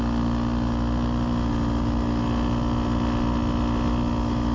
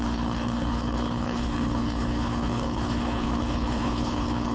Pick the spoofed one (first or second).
second